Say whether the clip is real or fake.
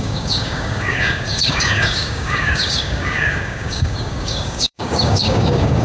fake